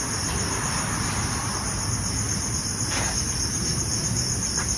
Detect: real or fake real